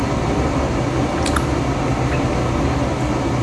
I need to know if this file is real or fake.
real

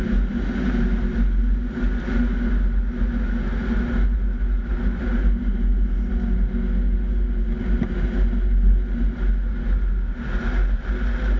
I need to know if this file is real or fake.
real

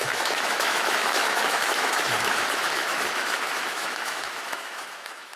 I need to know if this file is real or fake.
fake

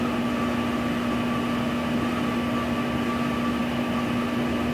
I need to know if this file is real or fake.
real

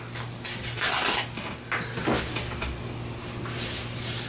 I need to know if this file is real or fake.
real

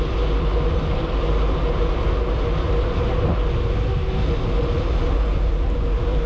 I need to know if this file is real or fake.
real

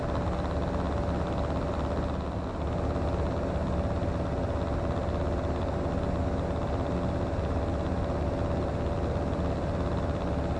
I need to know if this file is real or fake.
real